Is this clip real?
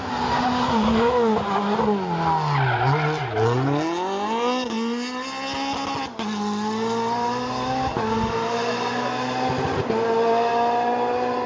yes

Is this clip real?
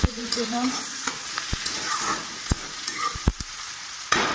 no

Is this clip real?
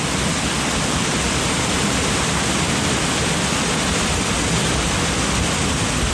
yes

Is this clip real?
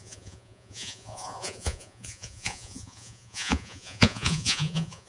no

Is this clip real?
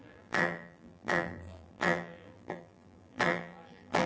no